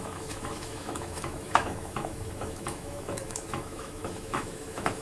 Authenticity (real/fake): fake